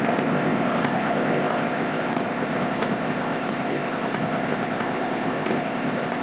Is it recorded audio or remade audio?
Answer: remade